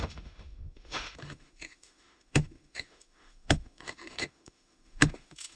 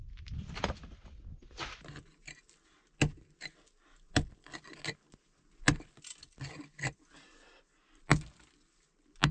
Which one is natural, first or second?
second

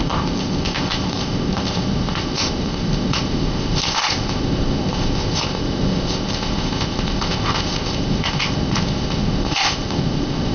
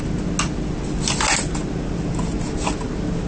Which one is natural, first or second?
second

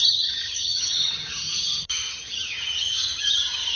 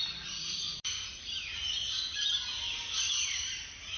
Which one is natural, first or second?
second